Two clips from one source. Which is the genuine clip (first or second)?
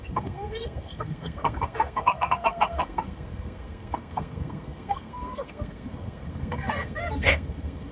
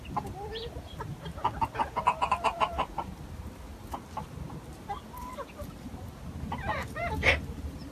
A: second